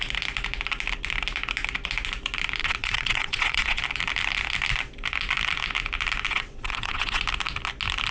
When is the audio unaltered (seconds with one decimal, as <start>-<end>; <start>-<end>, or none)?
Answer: 0.0-2.6; 3.8-6.3; 7.2-8.1